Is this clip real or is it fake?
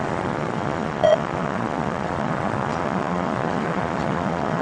fake